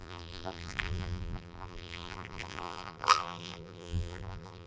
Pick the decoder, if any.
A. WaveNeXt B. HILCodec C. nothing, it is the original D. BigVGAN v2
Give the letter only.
D